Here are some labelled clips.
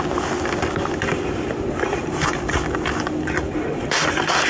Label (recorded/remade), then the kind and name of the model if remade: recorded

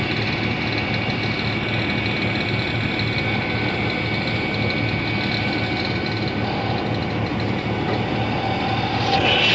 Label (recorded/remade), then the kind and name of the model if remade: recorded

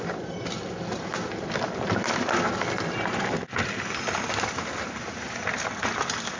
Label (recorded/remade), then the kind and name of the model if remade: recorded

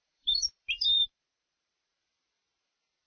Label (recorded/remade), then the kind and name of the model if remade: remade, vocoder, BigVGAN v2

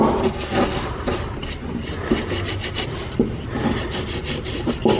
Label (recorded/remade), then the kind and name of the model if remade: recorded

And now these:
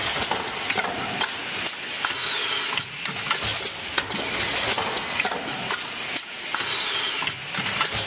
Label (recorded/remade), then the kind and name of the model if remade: recorded